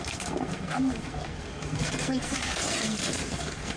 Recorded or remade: remade